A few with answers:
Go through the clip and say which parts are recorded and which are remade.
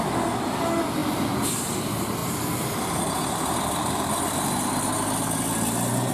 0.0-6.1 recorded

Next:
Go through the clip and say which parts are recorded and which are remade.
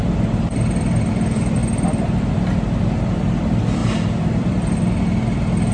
0.0-1.6 recorded; 1.6-2.3 remade; 2.3-3.8 recorded; 3.8-4.5 remade; 4.5-5.7 recorded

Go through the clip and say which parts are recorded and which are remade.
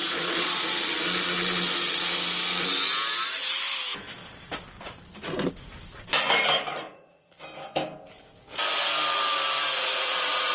0.0-0.7 remade; 0.7-6.7 recorded; 6.7-7.3 remade; 7.3-9.7 recorded; 9.7-10.5 remade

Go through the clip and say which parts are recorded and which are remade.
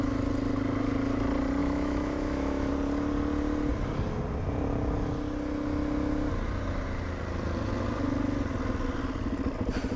0.0-1.6 recorded; 1.6-2.7 remade; 2.7-10.0 recorded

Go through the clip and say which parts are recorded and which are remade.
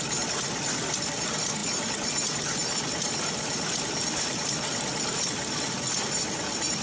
0.0-6.8 recorded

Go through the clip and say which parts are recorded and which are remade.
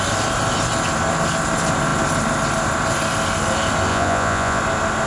0.0-3.9 recorded; 3.9-4.6 remade; 4.6-5.1 recorded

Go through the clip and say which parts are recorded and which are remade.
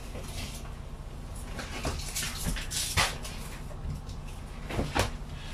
0.0-5.5 recorded